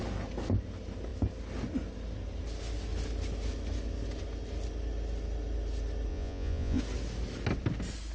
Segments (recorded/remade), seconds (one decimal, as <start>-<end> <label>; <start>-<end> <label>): 0.0-6.1 recorded; 6.1-6.8 remade; 6.8-8.1 recorded